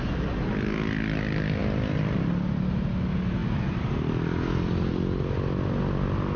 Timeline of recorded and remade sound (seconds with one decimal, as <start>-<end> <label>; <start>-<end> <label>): 0.0-6.4 recorded